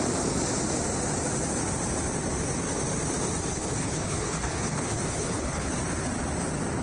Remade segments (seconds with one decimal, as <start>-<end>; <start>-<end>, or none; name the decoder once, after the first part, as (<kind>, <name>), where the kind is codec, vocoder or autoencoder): 3.5-5.7 (codec, HILCodec)